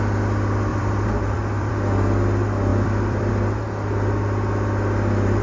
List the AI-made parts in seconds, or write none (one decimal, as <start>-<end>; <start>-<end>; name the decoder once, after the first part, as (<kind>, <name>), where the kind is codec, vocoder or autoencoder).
0.7-1.7 (vocoder, BigVGAN v2); 2.7-3.3